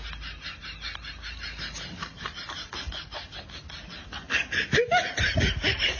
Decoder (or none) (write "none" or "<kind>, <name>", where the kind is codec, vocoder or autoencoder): none